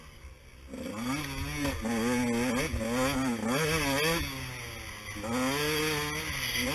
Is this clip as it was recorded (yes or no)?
yes